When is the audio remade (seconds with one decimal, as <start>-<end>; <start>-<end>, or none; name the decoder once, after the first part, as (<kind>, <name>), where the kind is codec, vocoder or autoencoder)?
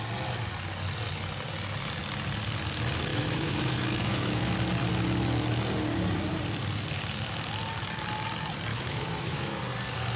3.1-4.5 (autoencoder, DAC-VAE); 8.7-9.6